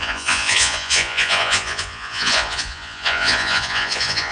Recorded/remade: remade